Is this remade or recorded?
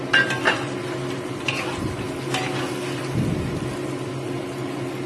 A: recorded